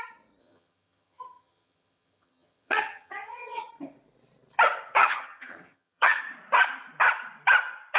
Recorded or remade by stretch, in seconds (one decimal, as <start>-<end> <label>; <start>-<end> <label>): 0.0-0.4 recorded; 0.4-3.7 remade; 3.7-5.0 recorded; 5.0-6.2 remade; 6.2-8.0 recorded